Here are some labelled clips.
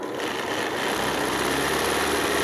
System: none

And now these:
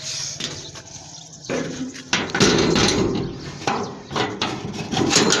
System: none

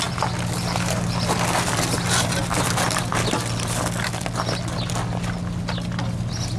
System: none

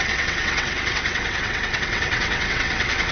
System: vocoder, WaveNeXt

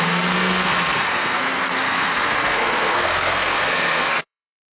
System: codec, SNAC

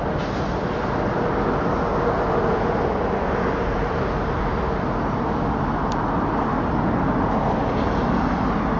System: none